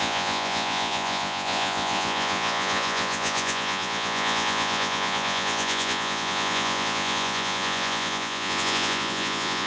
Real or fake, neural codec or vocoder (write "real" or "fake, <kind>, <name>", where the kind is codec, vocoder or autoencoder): fake, vocoder, Vocos